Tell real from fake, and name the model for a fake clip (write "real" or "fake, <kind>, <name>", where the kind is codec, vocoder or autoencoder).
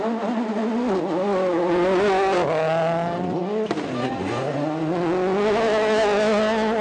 real